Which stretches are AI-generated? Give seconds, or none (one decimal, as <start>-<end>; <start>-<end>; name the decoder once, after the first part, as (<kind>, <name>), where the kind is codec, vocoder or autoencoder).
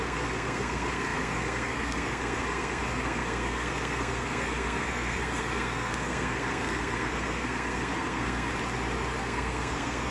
0.0-8.5 (codec, SNAC); 9.2-10.1